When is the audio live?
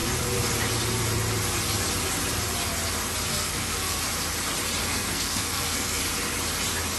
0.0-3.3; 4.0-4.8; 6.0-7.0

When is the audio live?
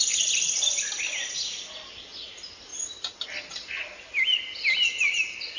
0.0-5.6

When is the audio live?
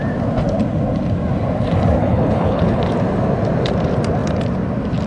0.0-2.0; 2.8-5.1